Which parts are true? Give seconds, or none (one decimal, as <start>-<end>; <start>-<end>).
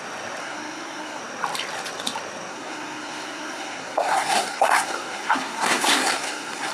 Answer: 0.0-0.4; 1.2-2.5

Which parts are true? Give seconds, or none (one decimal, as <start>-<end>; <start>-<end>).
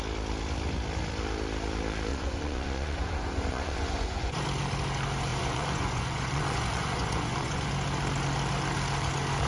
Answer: 0.0-2.1; 4.4-5.3; 7.7-9.5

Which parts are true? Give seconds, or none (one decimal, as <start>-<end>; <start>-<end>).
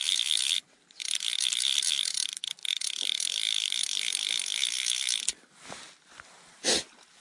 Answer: 0.0-7.2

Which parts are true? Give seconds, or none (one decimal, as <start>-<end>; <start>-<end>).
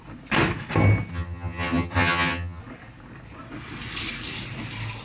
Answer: 0.0-1.1; 2.6-5.0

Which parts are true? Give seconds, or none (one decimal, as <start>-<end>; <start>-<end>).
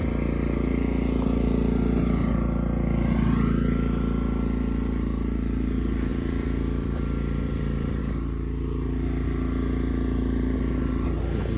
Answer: 0.0-6.1; 8.0-11.6